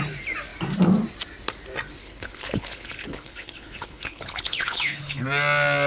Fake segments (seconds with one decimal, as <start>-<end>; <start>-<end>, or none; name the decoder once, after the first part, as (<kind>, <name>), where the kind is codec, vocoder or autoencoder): 2.0-5.2 (codec, HILCodec)